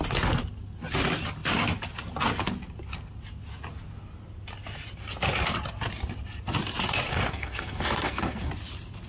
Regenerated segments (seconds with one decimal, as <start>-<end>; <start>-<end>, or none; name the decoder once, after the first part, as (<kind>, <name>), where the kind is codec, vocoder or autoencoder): 7.1-8.5 (codec, SNAC)